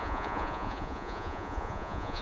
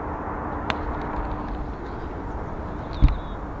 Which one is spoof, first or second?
first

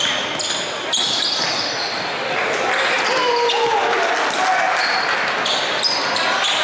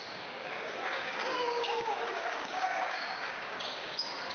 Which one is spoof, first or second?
second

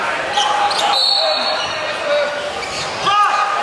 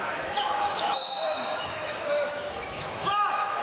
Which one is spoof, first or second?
second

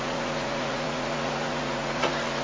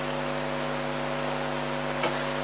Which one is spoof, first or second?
first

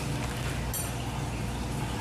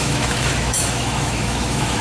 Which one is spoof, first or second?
second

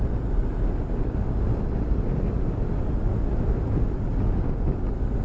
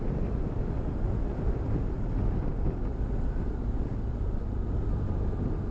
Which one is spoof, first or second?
second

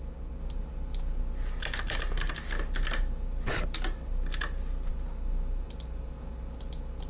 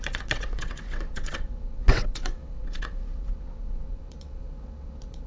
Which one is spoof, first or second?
second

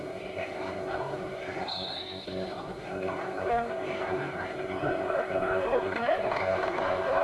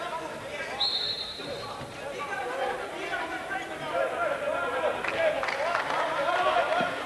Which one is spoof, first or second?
first